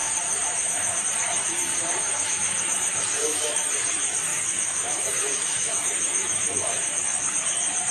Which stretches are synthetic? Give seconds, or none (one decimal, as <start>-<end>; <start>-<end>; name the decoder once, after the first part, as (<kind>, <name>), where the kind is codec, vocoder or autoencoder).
0.0-1.0 (autoencoder, DAC-VAE); 1.7-3.7; 4.3-7.0